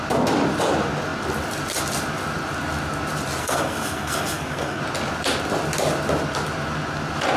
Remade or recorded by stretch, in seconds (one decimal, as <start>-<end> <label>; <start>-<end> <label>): 0.0-3.4 recorded; 3.4-4.8 remade; 4.8-7.4 recorded